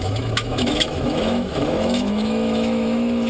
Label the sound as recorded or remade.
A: remade